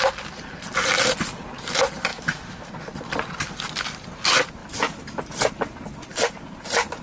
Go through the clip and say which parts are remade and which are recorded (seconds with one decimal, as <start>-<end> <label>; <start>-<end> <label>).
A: 0.0-2.1 recorded; 2.1-2.7 remade; 2.7-7.0 recorded